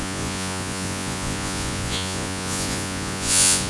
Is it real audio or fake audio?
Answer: fake